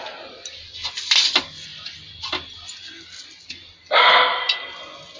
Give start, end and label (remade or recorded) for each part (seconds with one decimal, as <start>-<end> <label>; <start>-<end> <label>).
0.0-5.2 recorded